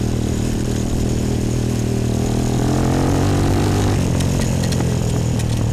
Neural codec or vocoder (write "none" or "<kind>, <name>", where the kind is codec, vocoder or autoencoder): none